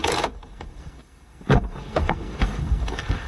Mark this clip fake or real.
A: fake